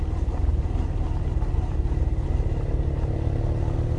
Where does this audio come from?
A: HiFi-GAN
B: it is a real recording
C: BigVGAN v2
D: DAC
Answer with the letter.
B